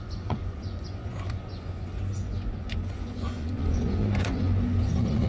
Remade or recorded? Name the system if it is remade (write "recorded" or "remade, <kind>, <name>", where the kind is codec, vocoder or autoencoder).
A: remade, vocoder, Vocos